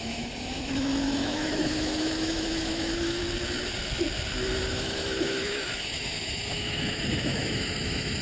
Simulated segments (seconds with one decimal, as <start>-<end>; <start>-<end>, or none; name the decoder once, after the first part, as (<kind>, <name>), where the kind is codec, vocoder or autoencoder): 0.0-3.2 (autoencoder, DAC-VAE); 4.6-8.2